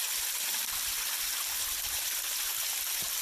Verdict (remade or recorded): recorded